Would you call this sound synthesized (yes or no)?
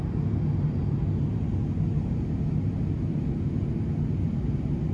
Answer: no